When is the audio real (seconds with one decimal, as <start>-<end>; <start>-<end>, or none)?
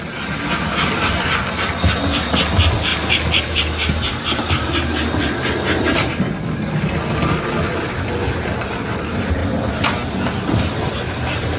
0.0-11.6